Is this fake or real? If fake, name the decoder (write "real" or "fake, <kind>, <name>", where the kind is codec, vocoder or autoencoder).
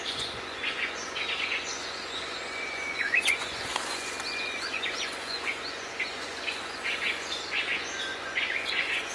fake, vocoder, Vocos